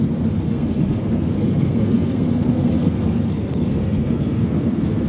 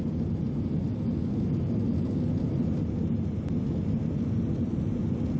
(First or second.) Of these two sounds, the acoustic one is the second